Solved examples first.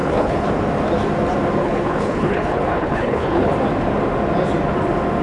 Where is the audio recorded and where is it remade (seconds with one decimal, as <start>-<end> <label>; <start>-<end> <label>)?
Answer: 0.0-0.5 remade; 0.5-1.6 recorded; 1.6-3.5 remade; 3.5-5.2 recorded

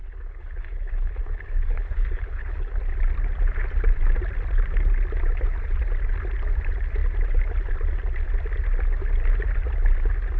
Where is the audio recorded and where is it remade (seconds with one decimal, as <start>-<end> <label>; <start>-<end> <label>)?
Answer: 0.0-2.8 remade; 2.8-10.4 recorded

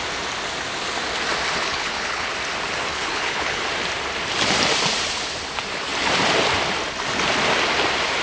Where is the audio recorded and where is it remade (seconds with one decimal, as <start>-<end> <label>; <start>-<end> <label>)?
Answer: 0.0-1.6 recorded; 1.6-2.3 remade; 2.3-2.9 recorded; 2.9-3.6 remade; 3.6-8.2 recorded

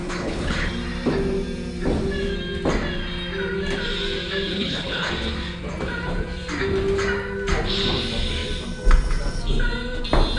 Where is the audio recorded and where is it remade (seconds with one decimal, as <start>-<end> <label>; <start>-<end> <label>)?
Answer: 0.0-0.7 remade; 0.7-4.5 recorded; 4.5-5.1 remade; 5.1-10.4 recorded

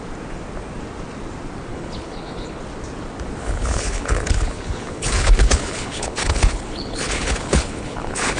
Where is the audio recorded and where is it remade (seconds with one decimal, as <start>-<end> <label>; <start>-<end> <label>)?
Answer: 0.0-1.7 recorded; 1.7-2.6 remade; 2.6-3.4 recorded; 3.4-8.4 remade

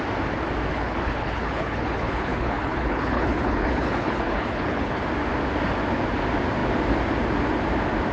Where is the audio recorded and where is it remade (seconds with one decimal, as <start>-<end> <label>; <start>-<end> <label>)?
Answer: 0.0-0.7 recorded; 0.7-5.0 remade; 5.0-8.1 recorded